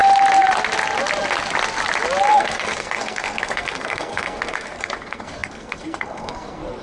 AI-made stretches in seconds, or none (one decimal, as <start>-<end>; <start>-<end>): 2.3-6.8